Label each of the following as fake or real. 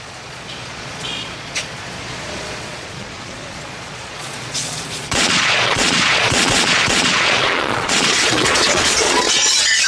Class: fake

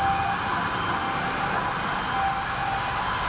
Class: real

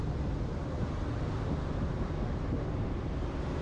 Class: real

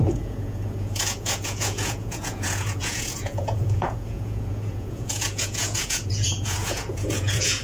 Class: fake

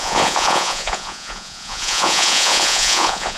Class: fake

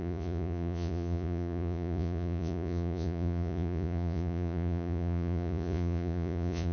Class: fake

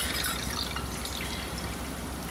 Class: real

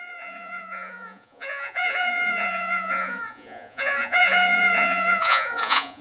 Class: fake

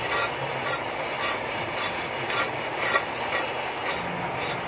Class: real